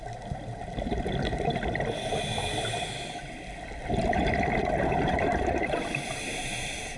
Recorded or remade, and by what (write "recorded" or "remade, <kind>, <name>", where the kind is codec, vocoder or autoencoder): recorded